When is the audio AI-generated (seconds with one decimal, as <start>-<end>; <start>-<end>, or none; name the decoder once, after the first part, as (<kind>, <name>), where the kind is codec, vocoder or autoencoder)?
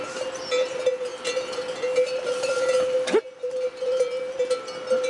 none